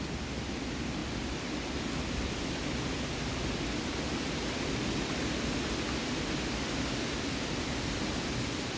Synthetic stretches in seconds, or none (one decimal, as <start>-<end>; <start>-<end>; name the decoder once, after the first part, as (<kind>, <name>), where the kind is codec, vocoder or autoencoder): none